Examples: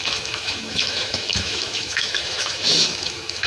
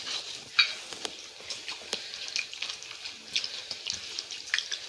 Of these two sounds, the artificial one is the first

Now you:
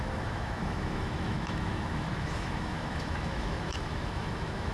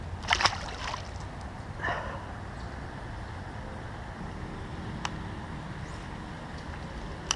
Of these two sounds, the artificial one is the first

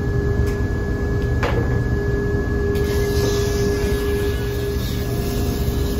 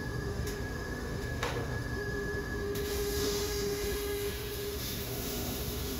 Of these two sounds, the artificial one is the second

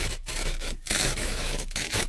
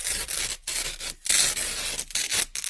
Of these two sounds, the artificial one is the first